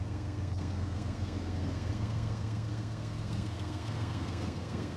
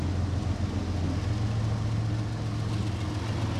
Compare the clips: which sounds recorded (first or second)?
second